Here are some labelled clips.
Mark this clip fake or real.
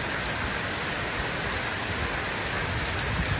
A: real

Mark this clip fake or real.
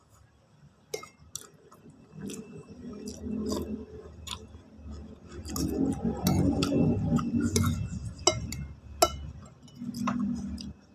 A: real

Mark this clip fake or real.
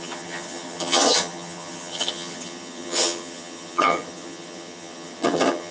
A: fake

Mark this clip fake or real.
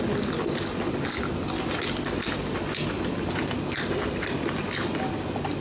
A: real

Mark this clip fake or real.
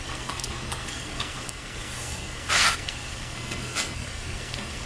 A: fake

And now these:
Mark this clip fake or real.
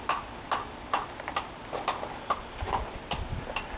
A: real